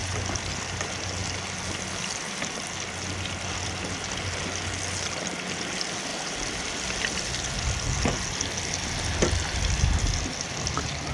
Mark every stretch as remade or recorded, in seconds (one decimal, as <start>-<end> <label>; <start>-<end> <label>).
0.0-11.1 recorded